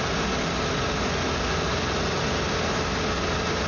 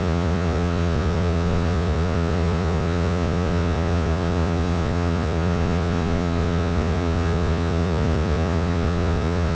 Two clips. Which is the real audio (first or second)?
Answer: first